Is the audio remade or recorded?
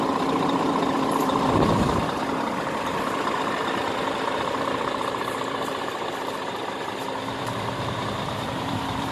remade